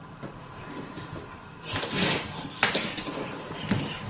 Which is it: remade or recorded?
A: recorded